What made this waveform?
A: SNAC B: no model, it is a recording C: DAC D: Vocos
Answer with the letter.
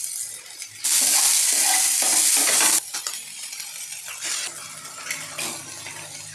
B